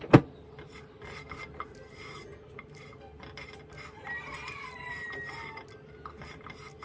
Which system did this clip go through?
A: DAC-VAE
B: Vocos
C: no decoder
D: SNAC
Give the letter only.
C